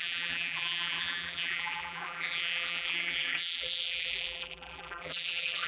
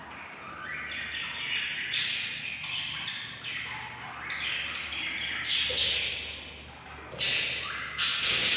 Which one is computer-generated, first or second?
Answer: first